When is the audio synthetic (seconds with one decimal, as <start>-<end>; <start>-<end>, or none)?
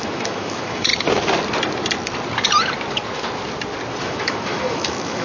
0.0-0.9; 4.0-5.2